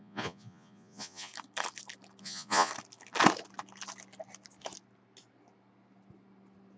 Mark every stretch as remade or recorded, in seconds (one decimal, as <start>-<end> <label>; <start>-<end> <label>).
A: 0.0-1.3 remade; 1.3-2.2 recorded; 2.2-2.7 remade; 2.7-6.8 recorded